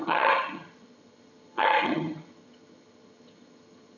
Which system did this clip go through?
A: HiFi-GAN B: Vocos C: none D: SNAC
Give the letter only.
A